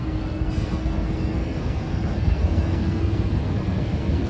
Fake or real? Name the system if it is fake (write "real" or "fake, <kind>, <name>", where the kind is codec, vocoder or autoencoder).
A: fake, codec, SNAC